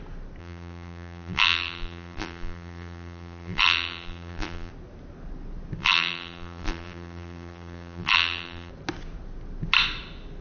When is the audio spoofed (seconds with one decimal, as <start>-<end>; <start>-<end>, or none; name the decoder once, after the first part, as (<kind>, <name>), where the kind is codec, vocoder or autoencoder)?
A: 0.4-4.7 (vocoder, BigVGAN v2); 5.8-8.7